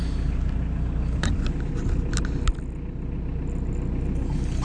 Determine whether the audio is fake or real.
real